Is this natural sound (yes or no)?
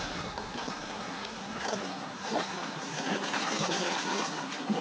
no